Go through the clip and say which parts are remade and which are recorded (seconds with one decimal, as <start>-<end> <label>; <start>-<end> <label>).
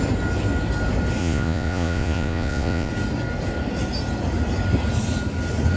0.0-1.2 recorded; 1.2-2.9 remade; 2.9-5.8 recorded